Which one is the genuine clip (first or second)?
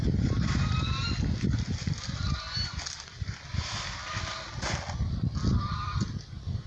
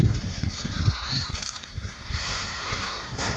first